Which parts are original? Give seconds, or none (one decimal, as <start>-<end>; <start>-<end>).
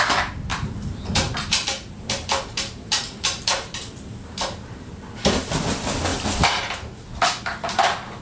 0.0-0.5; 4.9-6.1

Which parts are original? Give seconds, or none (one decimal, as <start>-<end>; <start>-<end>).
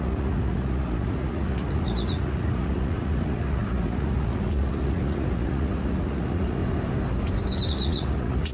6.6-7.7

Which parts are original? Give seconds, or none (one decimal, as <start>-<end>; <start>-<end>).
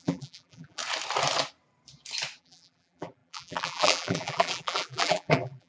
0.8-2.4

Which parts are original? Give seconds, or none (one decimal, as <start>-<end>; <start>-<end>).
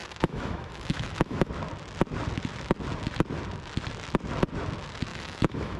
1.5-5.1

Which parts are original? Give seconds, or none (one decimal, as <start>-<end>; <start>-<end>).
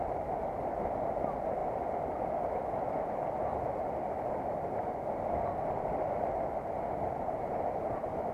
0.0-8.3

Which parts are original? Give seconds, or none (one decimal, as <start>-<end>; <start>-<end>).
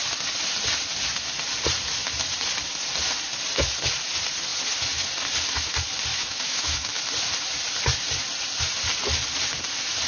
0.0-6.1; 7.0-10.1